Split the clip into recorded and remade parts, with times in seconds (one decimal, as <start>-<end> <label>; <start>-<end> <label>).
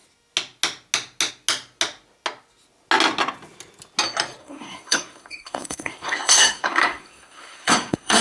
0.0-4.4 recorded; 4.4-8.2 remade